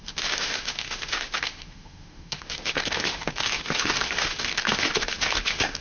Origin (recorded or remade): remade